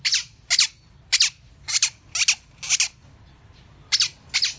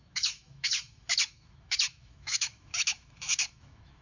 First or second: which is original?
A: first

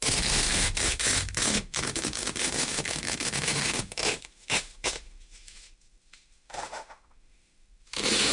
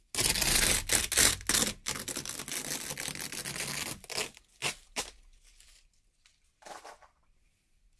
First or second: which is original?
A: second